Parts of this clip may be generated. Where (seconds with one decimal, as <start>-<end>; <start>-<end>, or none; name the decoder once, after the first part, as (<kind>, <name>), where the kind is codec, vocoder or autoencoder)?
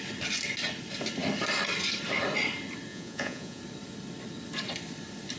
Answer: 2.9-3.6 (vocoder, Vocos)